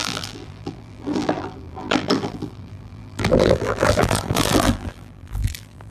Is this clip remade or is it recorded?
remade